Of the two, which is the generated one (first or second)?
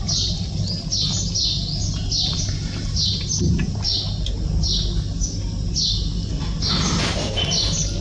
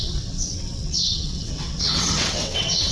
second